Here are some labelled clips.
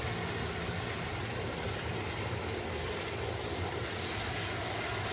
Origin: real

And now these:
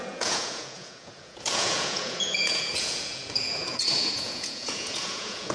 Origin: fake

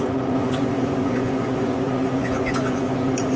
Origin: fake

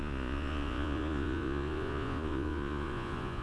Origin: fake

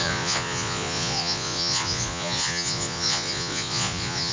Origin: fake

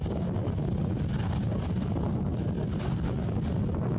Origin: real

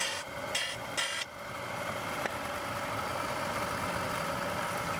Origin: real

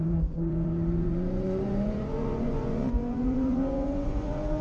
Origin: fake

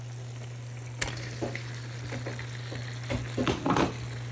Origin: real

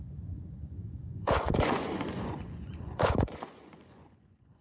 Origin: fake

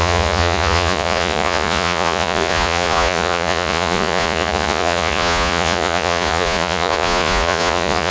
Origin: fake